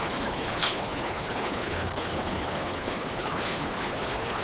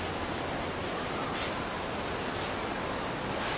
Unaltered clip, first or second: second